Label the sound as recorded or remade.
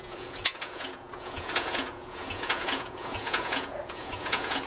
remade